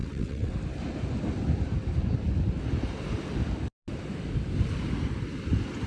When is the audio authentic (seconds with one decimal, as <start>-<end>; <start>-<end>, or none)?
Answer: 0.5-5.9